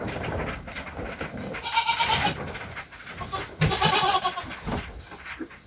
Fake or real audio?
real